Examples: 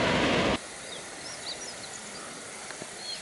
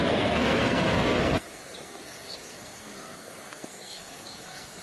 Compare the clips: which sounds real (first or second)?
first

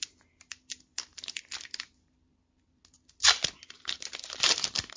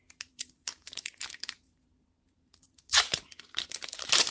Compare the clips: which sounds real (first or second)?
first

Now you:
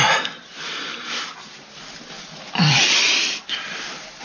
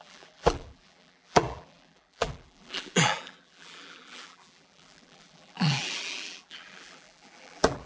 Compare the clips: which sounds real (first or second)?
first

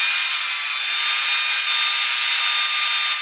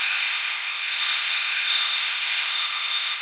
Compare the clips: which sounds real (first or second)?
first